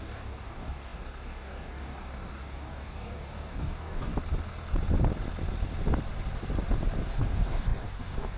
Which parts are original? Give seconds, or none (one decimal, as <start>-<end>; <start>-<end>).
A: 4.1-7.1